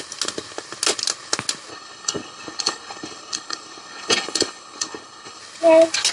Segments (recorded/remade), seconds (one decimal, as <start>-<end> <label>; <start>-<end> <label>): 0.0-1.7 recorded; 1.7-5.4 remade; 5.4-6.1 recorded